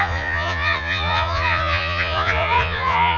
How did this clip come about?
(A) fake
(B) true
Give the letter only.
A